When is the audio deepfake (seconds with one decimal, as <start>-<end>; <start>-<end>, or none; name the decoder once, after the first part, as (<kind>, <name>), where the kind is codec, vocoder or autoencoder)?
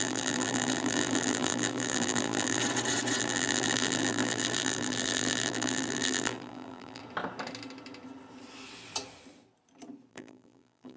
0.0-2.6 (vocoder, BigVGAN v2); 3.2-7.0; 10.1-11.0